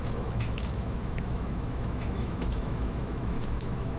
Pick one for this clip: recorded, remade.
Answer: remade